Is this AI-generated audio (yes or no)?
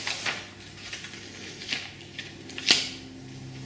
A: no